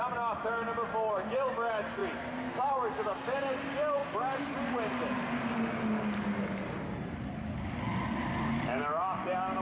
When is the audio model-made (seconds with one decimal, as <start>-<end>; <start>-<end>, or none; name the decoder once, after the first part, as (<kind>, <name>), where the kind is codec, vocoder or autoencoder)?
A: none